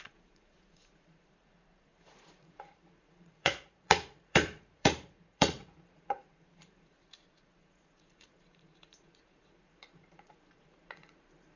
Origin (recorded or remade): remade